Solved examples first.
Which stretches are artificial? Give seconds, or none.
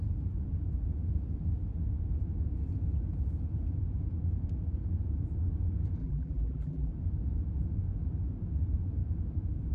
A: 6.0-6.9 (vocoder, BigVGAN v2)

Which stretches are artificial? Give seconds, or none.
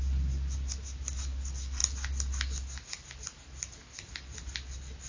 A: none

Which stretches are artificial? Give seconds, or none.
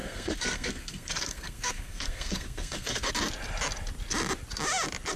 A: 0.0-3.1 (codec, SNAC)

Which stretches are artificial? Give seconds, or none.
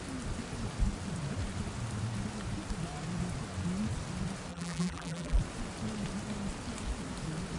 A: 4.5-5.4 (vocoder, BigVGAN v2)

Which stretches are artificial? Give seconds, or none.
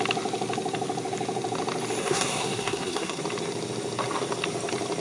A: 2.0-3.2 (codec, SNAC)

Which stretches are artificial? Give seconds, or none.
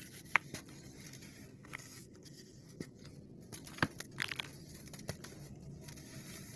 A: 1.5-3.0 (codec, SNAC)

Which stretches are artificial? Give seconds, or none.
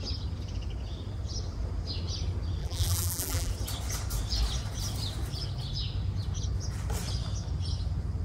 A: 2.6-3.5 (vocoder, BigVGAN v2)